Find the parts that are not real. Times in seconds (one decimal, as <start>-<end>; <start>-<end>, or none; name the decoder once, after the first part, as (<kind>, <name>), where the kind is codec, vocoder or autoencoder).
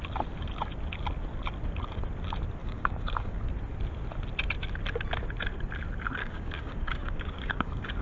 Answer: 2.6-3.4 (codec, DAC); 6.2-8.0